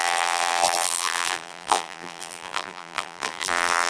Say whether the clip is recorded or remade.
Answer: remade